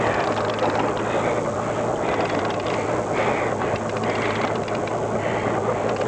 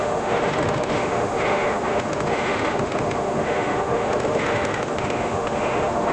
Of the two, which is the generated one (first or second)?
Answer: second